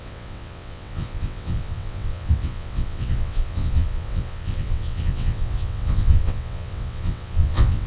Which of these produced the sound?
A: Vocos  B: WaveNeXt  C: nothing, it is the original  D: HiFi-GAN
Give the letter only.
B